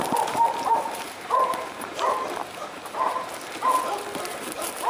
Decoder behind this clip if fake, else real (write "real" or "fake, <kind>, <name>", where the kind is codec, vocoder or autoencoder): real